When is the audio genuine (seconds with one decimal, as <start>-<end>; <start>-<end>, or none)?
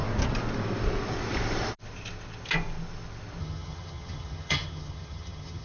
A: 0.0-3.4